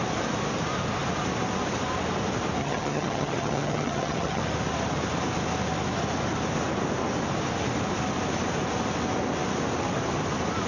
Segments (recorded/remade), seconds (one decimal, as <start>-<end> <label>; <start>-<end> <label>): 0.0-2.6 recorded; 2.6-4.4 remade; 4.4-10.7 recorded